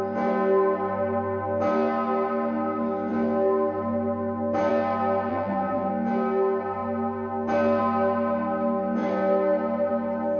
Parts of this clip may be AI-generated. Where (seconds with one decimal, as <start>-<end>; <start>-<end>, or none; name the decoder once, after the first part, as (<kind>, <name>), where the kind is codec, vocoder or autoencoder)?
5.3-5.9 (vocoder, BigVGAN v2)